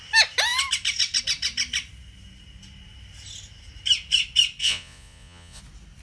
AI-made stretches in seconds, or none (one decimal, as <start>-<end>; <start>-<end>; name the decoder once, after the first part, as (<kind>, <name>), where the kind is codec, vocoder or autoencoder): 4.6-5.6 (vocoder, Vocos)